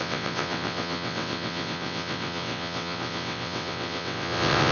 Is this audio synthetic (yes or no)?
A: yes